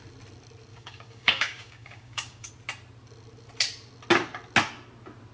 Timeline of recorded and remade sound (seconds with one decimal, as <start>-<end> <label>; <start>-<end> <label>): 0.0-0.7 recorded; 0.7-2.5 remade; 2.5-5.3 recorded